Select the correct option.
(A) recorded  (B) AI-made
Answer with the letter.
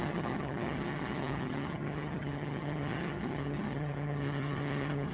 B